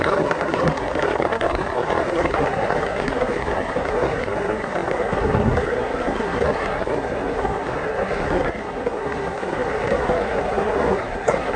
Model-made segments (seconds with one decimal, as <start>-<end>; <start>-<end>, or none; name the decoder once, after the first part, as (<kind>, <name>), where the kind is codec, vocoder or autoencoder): 0.0-11.6 (codec, SNAC)